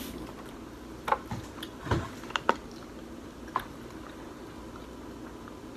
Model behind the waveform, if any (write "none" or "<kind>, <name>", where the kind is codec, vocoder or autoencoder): none